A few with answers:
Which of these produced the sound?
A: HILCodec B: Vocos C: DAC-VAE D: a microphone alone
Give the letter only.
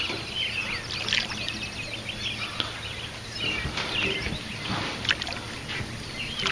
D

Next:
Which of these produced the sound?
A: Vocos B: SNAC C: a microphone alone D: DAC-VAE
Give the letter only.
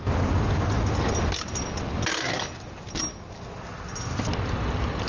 C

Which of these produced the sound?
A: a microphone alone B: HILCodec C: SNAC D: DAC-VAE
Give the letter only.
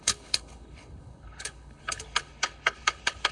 B